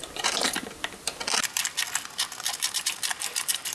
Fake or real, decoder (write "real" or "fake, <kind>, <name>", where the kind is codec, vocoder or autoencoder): real